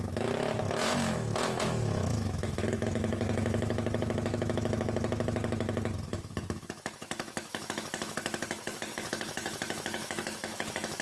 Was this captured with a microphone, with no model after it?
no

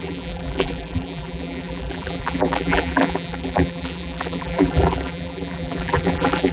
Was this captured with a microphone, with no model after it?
no